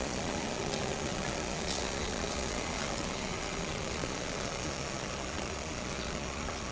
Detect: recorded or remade remade